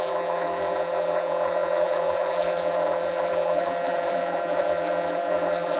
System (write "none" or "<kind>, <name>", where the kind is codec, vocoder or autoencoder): vocoder, BigVGAN v2